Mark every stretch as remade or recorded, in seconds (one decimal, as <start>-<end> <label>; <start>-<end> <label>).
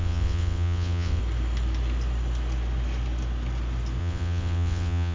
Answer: 0.0-1.2 remade; 1.2-4.0 recorded; 4.0-5.1 remade